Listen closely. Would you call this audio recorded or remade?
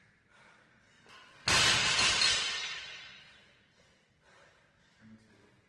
recorded